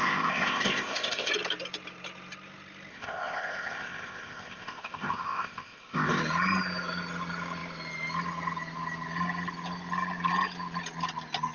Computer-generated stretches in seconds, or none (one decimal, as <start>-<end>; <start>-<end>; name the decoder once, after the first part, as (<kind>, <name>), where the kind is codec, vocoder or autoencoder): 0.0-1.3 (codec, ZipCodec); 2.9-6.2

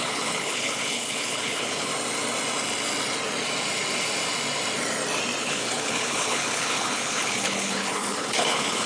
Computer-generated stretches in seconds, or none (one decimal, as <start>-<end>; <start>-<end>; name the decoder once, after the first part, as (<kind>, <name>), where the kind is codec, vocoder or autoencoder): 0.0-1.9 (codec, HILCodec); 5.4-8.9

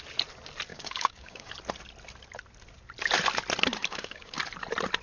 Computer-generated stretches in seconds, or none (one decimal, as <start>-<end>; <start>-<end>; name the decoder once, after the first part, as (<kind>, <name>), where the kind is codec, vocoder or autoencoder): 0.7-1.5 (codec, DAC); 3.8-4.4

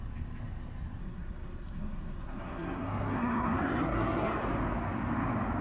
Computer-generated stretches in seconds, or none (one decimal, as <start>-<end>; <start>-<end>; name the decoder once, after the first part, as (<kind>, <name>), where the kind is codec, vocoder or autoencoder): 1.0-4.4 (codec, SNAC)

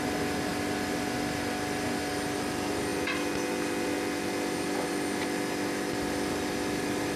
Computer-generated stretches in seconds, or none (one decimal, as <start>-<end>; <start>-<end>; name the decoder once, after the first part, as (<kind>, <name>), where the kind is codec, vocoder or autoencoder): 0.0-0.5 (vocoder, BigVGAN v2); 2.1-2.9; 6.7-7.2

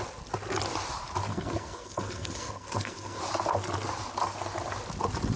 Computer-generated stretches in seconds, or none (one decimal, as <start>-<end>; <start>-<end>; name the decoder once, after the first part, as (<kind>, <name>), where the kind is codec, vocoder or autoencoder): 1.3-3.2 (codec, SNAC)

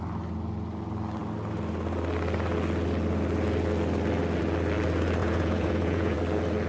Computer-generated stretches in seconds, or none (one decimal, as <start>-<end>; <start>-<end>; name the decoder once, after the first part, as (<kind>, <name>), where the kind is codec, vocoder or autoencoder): 5.2-6.2 (vocoder, Vocos)

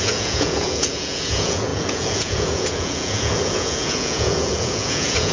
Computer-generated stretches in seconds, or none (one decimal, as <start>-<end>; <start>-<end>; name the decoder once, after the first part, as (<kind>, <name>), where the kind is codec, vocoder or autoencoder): 0.0-5.3 (vocoder, Vocos)